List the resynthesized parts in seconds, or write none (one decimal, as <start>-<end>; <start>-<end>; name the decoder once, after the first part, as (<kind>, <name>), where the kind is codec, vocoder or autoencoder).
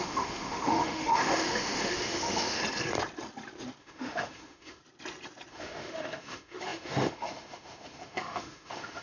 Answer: 0.0-2.6 (autoencoder, DAC-VAE); 3.8-4.8; 5.5-9.0